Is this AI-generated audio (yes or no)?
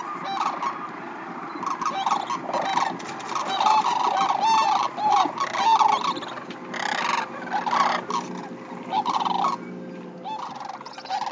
no